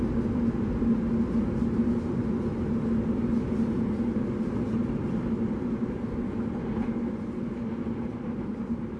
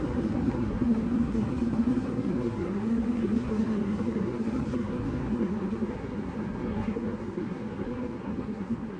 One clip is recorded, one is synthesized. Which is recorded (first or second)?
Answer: first